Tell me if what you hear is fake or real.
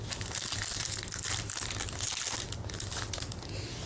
real